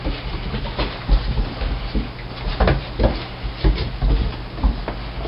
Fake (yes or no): no